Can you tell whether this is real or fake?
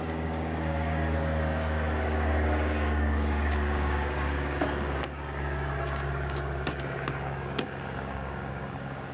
fake